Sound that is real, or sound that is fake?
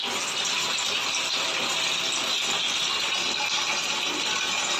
real